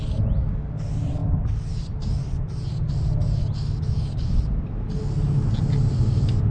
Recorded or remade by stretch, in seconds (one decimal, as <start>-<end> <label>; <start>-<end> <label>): 0.0-6.5 recorded